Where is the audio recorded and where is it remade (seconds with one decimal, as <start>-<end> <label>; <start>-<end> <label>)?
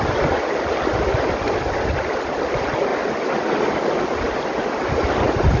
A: 0.0-5.6 recorded